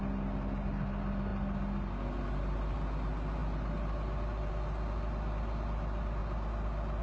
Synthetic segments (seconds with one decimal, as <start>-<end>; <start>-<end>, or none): none

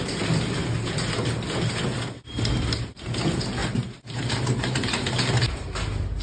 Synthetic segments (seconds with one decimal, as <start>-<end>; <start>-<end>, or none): none

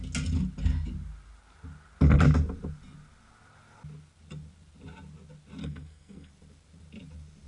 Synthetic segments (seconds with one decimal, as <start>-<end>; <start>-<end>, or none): 5.6-6.3